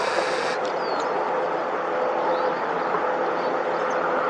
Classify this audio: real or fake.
real